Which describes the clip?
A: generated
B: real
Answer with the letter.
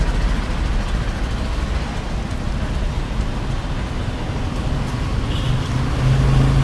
B